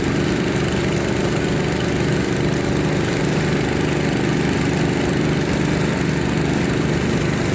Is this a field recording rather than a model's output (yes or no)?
yes